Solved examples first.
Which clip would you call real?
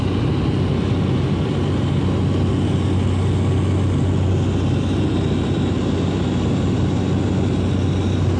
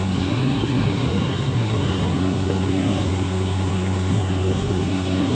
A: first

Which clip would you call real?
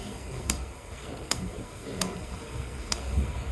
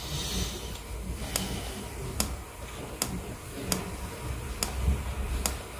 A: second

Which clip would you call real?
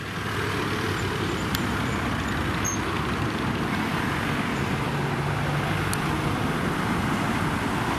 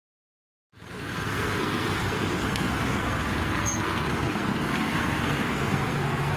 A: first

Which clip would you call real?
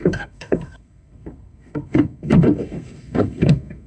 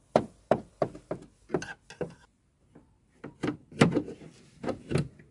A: second